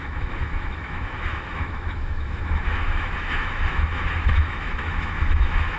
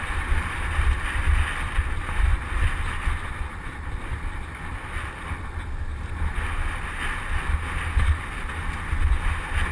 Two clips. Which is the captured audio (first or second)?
second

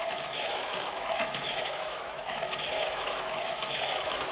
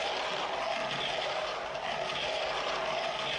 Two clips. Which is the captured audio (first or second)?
second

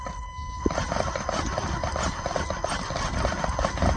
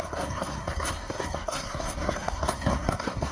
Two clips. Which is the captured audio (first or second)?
first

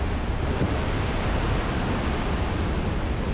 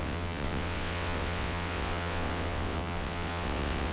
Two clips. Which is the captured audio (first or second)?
first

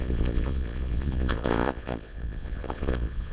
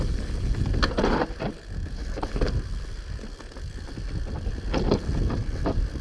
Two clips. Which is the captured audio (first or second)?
second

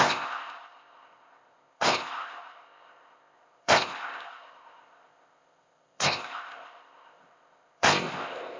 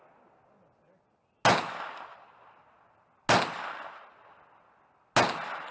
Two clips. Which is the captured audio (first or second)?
second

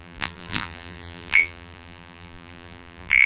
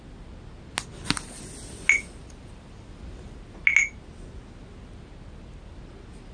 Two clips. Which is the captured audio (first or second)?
second